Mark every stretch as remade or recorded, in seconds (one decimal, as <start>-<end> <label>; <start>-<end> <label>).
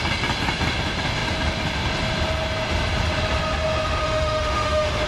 0.0-4.0 recorded; 4.0-5.1 remade